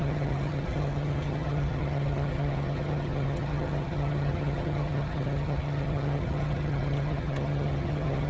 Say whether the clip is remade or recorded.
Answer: remade